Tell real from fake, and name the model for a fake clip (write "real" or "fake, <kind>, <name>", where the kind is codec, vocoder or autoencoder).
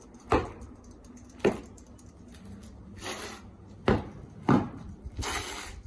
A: real